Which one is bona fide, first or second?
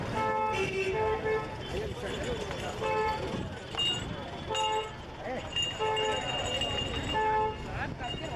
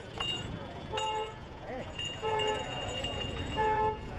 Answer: first